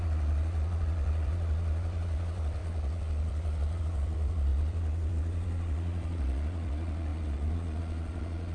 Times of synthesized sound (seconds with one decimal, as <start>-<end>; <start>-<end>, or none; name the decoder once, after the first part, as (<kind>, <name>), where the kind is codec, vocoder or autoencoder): 0.0-8.5 (vocoder, Vocos)